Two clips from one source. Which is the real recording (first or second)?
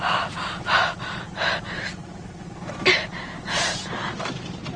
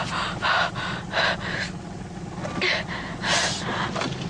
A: second